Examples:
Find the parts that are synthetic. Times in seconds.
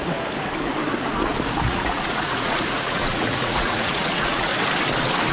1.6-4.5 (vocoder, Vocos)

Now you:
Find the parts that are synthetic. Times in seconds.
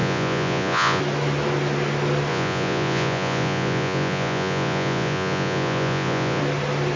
0.0-1.0 (vocoder, Vocos); 2.3-6.4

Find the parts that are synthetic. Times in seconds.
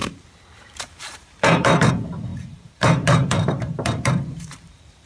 0.0-1.9 (vocoder, BigVGAN v2); 2.3-5.1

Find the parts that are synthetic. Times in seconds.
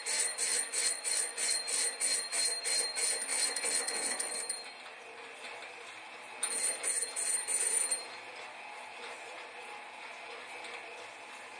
0.5-1.6 (vocoder, Vocos); 3.3-4.4